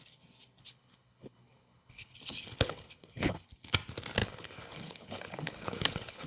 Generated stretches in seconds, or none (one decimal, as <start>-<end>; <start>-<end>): 0.6-3.5; 4.2-6.3